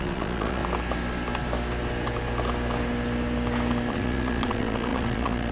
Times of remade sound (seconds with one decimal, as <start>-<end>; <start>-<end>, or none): 0.0-0.6; 3.9-5.5